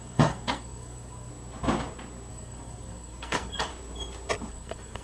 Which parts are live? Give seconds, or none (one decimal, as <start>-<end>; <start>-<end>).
1.3-2.3; 3.7-4.5